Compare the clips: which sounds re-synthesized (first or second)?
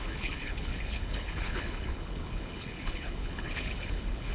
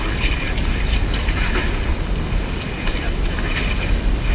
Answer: first